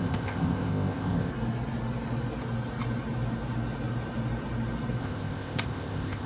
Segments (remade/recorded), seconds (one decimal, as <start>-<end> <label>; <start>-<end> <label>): 0.0-1.3 remade; 1.3-5.0 recorded; 5.0-6.3 remade